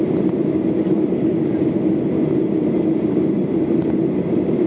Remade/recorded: recorded